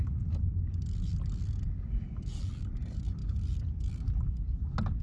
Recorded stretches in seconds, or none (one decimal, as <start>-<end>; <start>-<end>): 0.0-5.0